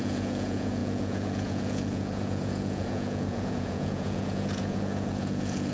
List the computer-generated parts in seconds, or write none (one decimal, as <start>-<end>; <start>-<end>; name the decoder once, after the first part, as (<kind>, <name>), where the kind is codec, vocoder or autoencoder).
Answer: 0.0-5.7 (vocoder, Vocos)